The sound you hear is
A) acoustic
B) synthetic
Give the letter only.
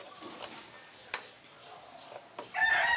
A